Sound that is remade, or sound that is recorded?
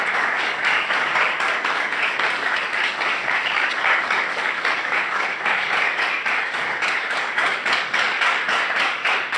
remade